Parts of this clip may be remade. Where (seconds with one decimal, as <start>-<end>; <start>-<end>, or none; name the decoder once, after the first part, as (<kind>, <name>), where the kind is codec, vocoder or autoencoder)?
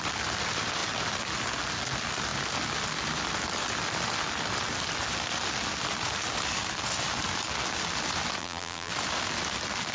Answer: 8.4-8.9 (vocoder, BigVGAN v2)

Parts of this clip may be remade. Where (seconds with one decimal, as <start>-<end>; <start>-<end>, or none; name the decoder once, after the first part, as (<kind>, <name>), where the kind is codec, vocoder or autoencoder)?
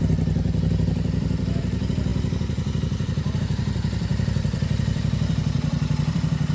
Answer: 0.0-6.5 (vocoder, BigVGAN v2)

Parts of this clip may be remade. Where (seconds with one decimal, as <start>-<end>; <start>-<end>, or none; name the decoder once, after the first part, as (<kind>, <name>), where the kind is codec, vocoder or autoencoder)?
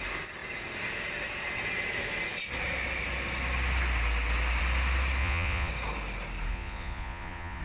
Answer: 5.2-5.7 (vocoder, Vocos); 6.5-7.6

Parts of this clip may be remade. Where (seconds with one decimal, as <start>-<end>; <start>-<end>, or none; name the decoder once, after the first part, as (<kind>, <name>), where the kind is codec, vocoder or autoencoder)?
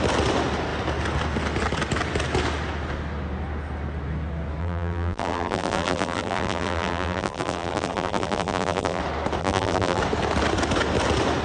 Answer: 4.6-9.0 (vocoder, BigVGAN v2); 9.4-10.0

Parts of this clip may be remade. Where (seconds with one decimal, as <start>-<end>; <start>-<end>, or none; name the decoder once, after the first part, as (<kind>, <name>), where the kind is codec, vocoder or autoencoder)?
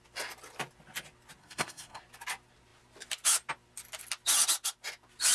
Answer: 1.4-2.0 (codec, SNAC)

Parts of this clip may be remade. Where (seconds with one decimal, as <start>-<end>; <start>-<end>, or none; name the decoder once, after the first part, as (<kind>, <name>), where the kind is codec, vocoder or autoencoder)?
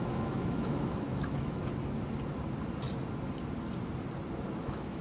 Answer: 0.0-1.6 (autoencoder, DAC-VAE); 4.6-5.0